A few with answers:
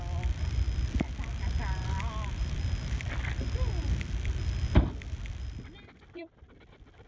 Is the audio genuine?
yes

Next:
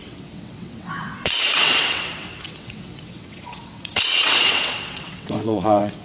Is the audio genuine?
no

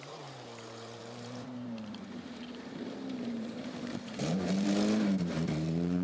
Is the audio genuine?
no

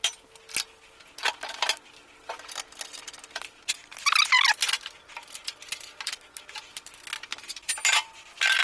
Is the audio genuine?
yes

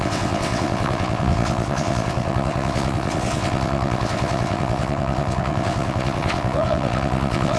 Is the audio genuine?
no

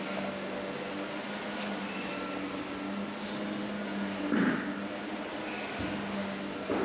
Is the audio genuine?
yes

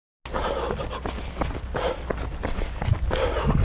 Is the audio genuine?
yes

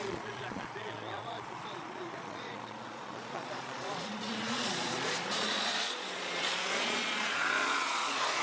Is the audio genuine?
no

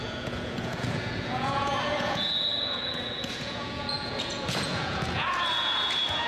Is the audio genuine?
no